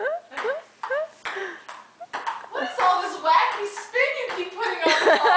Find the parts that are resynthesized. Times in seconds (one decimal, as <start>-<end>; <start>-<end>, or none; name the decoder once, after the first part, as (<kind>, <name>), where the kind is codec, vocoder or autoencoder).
none